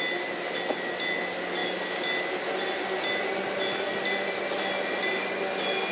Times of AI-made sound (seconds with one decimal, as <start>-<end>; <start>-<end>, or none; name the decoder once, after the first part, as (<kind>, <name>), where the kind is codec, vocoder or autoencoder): none